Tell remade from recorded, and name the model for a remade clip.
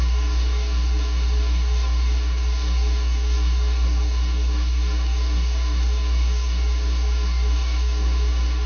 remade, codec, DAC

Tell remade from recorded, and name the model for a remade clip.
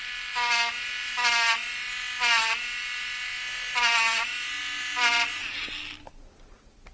recorded